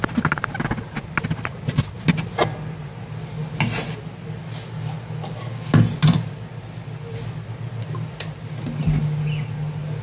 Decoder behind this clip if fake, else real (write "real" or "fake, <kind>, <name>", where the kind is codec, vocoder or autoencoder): real